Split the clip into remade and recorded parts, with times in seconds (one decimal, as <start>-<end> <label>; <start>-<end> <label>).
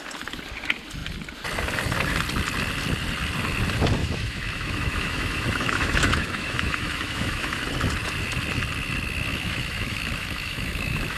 0.0-4.0 recorded; 4.0-7.6 remade; 7.6-9.3 recorded; 9.3-11.2 remade